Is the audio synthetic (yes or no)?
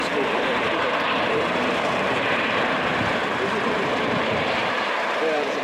yes